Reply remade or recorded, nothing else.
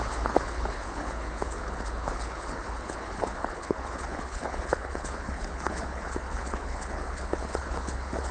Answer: remade